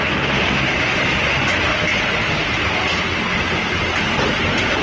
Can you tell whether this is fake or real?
real